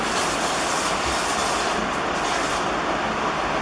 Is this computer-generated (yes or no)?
no